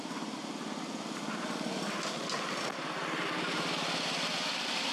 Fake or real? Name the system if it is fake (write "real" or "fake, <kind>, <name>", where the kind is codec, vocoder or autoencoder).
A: real